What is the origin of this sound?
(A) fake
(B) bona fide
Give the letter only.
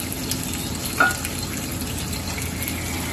B